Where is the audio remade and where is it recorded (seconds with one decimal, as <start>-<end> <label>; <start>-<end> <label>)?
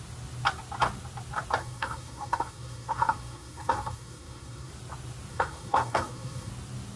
0.0-1.6 recorded; 1.6-4.7 remade; 4.7-5.3 recorded; 5.3-6.5 remade; 6.5-7.0 recorded